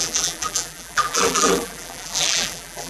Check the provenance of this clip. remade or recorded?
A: remade